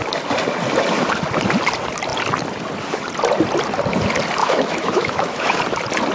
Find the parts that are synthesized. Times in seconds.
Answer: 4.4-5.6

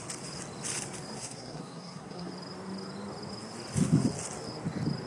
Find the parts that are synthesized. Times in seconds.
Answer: 1.2-2.3

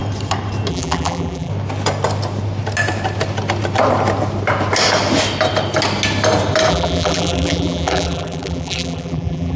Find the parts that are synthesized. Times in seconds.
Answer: 0.7-1.5; 6.7-9.6

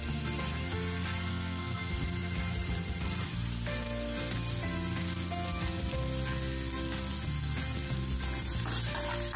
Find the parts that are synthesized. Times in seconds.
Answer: 1.3-1.9

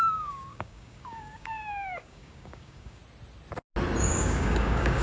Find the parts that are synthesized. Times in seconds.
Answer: 0.0-3.0; 4.0-5.0

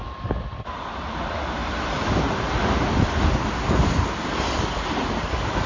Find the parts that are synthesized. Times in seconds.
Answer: none

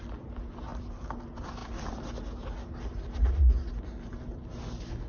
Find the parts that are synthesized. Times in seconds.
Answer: none

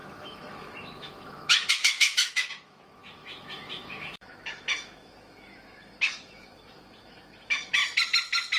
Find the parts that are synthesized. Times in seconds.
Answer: 0.0-7.8